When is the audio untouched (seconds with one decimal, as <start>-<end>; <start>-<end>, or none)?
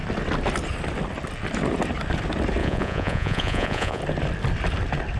0.0-2.6; 4.0-5.2